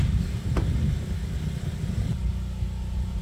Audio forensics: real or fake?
real